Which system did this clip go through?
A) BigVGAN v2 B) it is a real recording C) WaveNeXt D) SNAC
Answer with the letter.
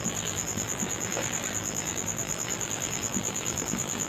A